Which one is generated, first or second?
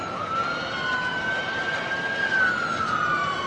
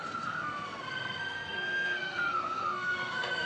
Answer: second